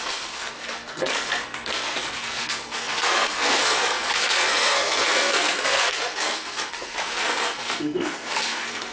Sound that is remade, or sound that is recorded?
remade